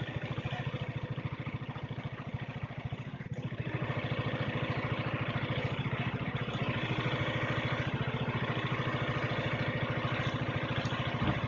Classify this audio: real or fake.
real